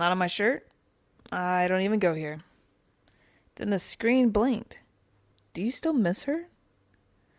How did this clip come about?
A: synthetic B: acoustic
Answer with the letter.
B